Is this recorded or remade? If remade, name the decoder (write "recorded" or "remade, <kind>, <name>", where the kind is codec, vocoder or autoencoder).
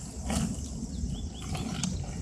recorded